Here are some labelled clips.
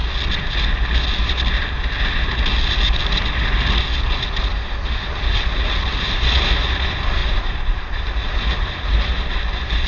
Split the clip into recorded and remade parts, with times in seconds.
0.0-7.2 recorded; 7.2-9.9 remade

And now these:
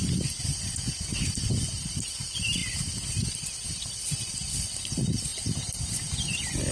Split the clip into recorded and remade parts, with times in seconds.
0.0-6.7 recorded

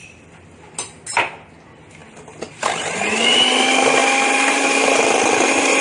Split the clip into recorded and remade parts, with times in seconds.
0.0-5.8 recorded